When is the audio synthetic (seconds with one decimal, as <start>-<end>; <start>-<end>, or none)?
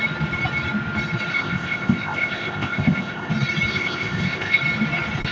1.3-3.3; 3.7-4.6